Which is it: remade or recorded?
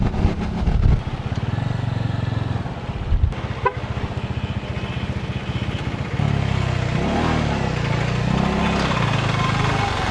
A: recorded